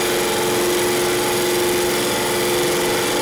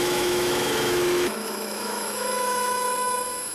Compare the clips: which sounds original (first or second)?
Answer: first